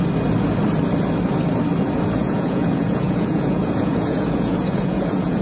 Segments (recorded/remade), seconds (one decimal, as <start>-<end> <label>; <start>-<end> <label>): 0.0-2.2 recorded; 2.2-5.4 remade